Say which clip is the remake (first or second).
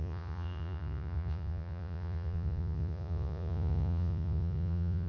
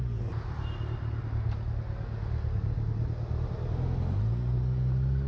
first